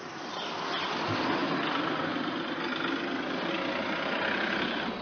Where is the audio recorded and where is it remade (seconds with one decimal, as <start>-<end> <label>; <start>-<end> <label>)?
0.0-5.0 recorded